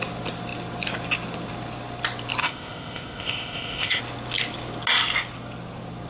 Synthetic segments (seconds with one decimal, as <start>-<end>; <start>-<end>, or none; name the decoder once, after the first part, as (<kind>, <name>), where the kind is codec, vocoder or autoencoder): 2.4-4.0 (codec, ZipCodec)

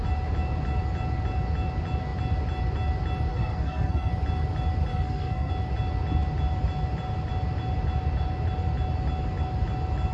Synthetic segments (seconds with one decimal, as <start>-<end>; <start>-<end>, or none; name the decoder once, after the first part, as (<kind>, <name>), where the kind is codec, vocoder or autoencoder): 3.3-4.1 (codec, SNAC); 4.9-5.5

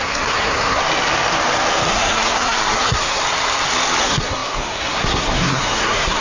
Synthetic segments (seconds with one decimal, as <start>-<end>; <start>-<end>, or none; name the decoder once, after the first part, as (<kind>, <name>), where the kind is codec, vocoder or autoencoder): 0.0-0.8 (codec, SNAC); 1.9-3.2; 4.0-6.2